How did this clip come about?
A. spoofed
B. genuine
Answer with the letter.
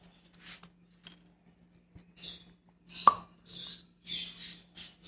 B